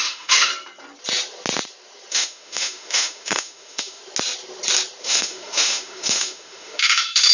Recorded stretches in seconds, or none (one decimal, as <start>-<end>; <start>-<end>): 0.5-2.1; 4.0-5.0